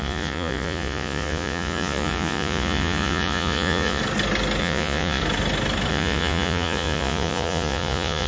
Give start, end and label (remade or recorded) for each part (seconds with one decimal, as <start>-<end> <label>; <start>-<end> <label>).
0.0-4.0 remade; 4.0-4.6 recorded; 4.6-5.2 remade; 5.2-5.9 recorded; 5.9-8.3 remade